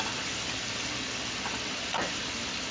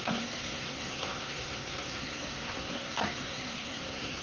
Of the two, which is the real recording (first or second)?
first